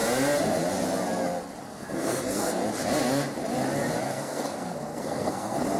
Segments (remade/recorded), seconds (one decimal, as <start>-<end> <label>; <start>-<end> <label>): 0.0-1.6 recorded; 1.6-2.6 remade; 2.6-4.0 recorded; 4.0-5.8 remade